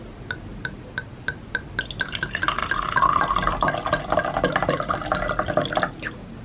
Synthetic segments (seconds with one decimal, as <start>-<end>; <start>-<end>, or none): 0.5-1.8; 2.6-3.3